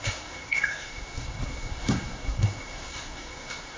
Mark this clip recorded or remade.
remade